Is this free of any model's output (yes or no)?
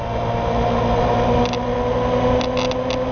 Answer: yes